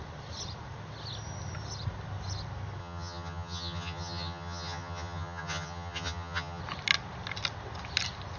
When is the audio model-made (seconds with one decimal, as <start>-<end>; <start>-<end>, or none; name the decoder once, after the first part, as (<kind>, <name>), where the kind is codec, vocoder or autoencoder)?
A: 2.8-6.6 (vocoder, HiFi-GAN)